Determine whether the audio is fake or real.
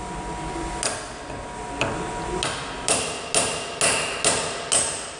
real